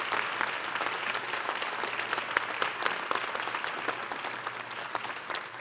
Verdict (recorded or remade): recorded